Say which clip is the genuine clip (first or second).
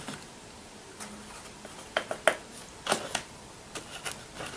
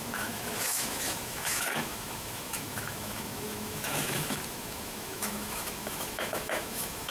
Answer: first